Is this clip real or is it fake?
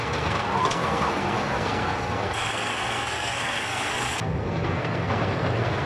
fake